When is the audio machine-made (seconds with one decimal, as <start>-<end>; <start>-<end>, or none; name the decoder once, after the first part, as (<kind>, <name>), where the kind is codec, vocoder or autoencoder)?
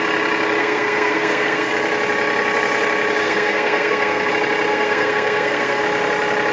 0.6-1.7 (codec, SNAC); 3.2-4.3; 4.7-5.8